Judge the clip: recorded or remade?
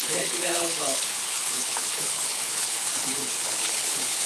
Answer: remade